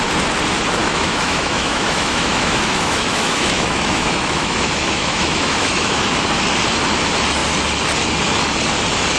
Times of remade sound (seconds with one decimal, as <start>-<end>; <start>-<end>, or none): 0.8-6.0